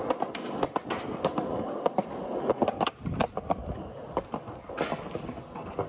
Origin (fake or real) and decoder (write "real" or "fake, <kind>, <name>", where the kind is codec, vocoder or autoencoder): real